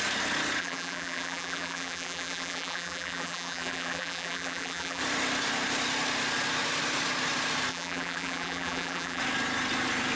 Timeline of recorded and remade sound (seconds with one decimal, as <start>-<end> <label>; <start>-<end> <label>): 0.0-0.6 recorded; 0.6-5.0 remade; 5.0-7.7 recorded; 7.7-9.2 remade; 9.2-10.2 recorded